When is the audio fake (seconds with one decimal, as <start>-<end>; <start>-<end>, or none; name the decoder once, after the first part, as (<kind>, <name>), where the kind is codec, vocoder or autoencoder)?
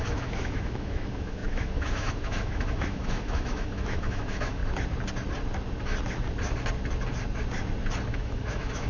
0.0-4.6 (autoencoder, DAC-VAE); 8.1-8.9